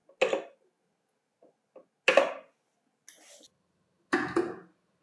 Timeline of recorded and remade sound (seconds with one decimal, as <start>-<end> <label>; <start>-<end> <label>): 0.0-5.0 recorded